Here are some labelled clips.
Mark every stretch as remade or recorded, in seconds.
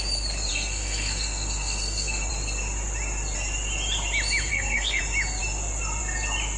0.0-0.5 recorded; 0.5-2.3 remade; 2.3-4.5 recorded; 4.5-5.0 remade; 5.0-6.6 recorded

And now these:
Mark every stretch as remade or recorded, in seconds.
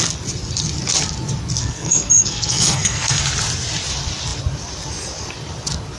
0.0-1.6 recorded; 1.6-3.2 remade; 3.2-6.0 recorded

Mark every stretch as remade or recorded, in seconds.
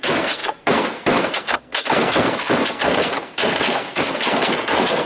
0.0-5.1 remade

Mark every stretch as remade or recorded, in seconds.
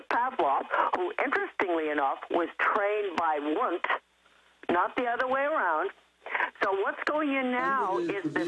0.0-8.5 recorded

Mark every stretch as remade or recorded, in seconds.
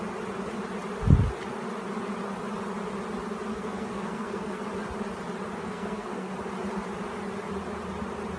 0.0-3.5 recorded; 3.5-4.6 remade; 4.6-5.6 recorded; 5.6-6.3 remade; 6.3-8.4 recorded